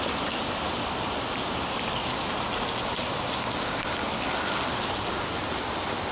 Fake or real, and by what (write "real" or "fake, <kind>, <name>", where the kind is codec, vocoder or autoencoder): real